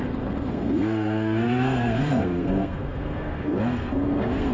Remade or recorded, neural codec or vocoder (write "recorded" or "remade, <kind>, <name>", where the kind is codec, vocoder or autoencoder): remade, codec, SNAC